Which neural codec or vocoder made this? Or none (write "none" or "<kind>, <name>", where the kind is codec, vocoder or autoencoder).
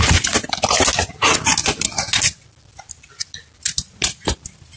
none